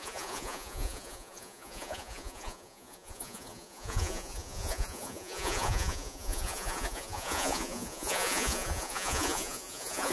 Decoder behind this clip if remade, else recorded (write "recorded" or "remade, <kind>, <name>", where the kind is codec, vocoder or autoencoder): remade, vocoder, Vocos